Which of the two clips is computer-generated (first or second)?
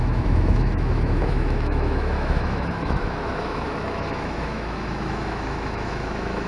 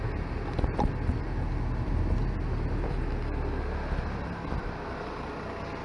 first